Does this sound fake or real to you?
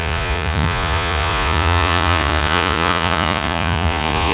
fake